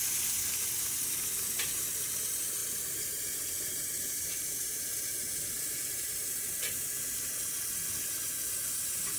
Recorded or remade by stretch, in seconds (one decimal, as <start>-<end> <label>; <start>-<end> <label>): 0.0-2.6 recorded; 2.6-6.8 remade; 6.8-9.2 recorded